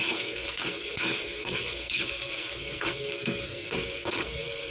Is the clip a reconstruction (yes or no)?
yes